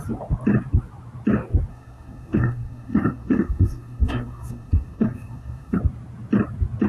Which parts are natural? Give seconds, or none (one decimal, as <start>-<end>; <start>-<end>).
0.0-1.7; 5.8-6.9